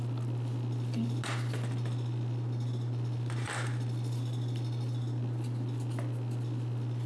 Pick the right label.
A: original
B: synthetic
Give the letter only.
A